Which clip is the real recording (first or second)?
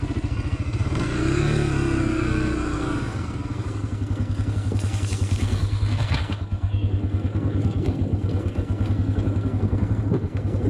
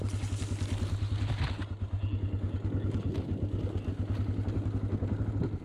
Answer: second